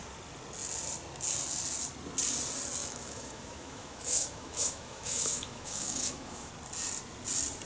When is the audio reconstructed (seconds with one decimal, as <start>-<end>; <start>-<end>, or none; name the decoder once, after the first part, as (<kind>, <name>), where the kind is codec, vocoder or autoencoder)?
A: 2.8-6.5 (autoencoder, DAC-VAE)